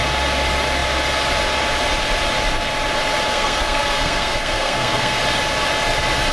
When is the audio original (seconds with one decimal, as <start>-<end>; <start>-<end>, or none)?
0.0-3.3; 5.2-6.3